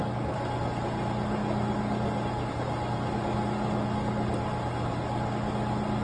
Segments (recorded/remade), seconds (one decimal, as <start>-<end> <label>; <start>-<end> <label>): 0.0-6.0 recorded